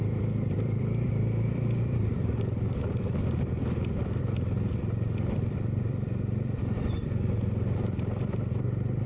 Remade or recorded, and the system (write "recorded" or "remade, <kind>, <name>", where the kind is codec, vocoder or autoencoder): remade, vocoder, BigVGAN v2